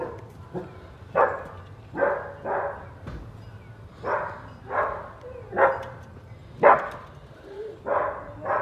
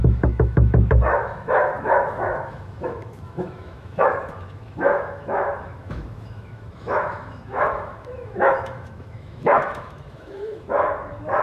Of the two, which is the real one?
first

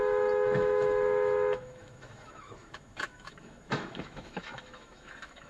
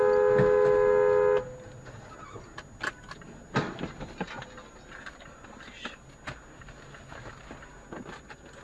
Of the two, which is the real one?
second